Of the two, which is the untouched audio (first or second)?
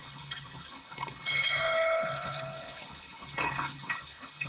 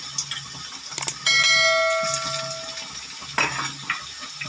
second